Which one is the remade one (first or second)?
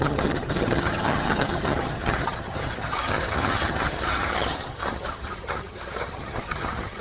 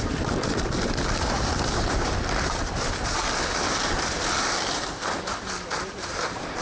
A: first